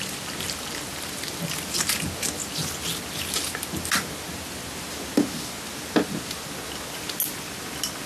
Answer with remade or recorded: recorded